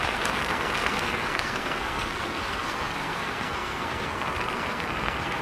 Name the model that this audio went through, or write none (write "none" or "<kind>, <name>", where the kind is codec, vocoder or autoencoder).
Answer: codec, SNAC